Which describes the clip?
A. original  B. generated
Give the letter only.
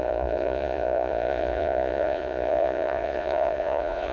B